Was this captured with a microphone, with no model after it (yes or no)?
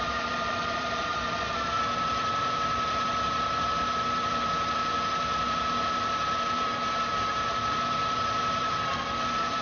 no